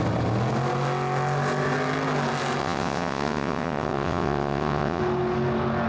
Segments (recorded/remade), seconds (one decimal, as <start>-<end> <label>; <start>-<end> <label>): 0.0-2.6 recorded; 2.6-5.0 remade; 5.0-5.9 recorded